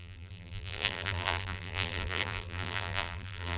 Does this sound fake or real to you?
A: fake